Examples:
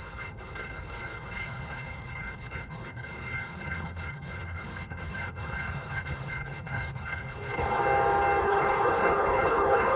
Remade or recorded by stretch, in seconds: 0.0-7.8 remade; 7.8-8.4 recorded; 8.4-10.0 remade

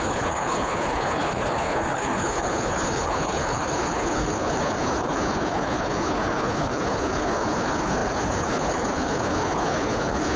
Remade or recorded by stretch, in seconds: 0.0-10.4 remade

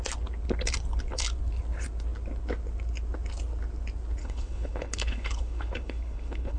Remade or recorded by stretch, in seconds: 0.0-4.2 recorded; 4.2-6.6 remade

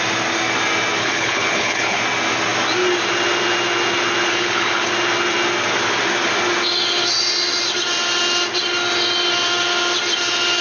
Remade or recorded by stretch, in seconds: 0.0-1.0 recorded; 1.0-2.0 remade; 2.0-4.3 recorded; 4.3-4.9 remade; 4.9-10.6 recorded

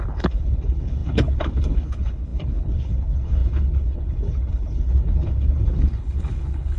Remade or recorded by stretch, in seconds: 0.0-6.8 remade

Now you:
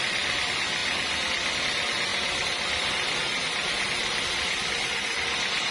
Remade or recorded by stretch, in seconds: 0.0-5.7 recorded